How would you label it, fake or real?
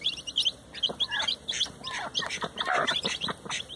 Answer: fake